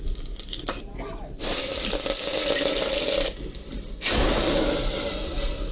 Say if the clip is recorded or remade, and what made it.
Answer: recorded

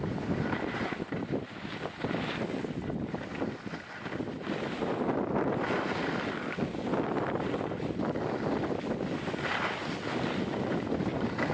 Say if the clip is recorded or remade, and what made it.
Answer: recorded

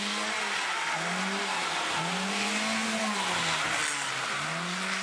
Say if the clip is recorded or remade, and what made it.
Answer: recorded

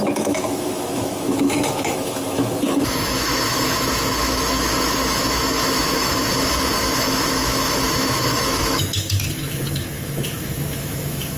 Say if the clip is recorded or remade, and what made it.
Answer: remade, autoencoder, DAC-VAE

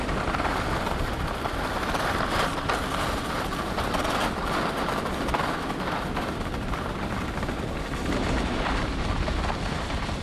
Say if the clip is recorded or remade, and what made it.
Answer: recorded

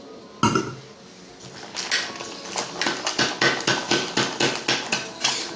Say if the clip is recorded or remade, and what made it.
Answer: recorded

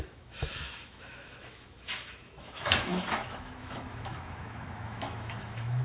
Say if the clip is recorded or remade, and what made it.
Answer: remade, autoencoder, DAC-VAE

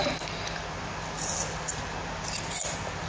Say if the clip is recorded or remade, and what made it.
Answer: recorded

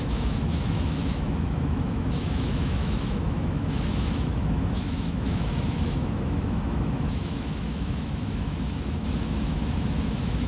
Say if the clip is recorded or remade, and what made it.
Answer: remade, autoencoder, DAC-VAE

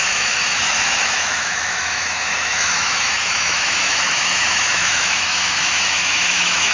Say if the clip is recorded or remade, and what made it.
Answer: remade, autoencoder, DAC-VAE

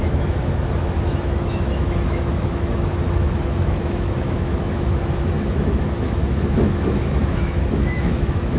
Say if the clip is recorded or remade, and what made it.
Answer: remade, autoencoder, DAC-VAE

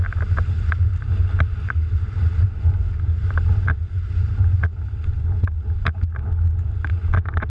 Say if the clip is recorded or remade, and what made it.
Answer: recorded